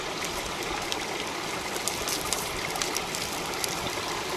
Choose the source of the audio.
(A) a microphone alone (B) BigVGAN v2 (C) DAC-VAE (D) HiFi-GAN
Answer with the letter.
A